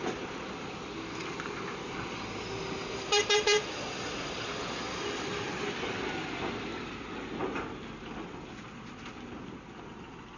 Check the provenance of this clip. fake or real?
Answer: real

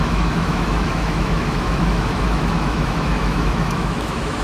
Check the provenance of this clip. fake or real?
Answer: fake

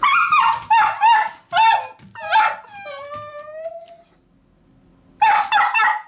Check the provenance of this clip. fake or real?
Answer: real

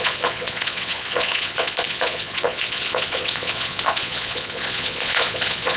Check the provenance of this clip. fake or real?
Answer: fake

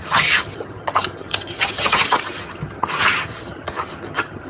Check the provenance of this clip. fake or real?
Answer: fake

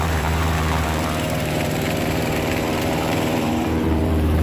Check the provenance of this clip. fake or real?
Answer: fake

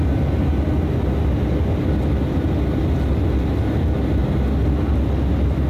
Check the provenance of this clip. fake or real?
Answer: real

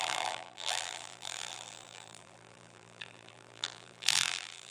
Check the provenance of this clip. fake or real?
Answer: fake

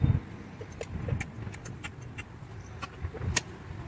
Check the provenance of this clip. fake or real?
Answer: real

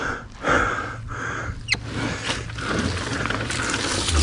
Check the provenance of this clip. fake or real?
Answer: real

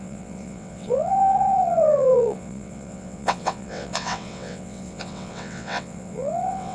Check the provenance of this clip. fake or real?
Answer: fake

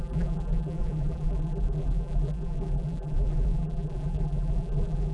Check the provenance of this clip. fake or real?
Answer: fake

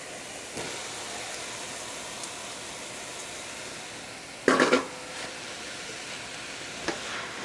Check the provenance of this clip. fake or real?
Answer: real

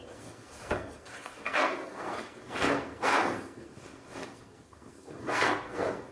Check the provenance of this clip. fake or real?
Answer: fake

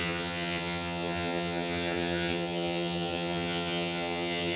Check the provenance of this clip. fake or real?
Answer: fake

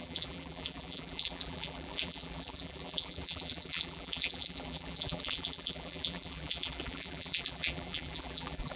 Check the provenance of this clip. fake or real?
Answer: fake